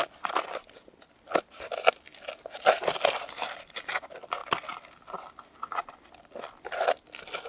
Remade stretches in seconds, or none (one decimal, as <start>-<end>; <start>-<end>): none